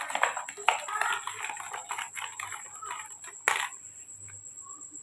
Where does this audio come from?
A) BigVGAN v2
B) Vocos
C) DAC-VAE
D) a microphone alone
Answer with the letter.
D